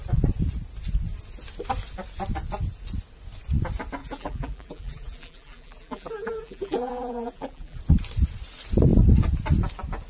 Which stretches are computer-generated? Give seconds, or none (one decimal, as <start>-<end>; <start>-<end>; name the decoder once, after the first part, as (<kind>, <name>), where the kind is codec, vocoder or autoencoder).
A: 4.0-7.8 (vocoder, BigVGAN v2)